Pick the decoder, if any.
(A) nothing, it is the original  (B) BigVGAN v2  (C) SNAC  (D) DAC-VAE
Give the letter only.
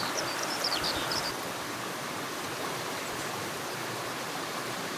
B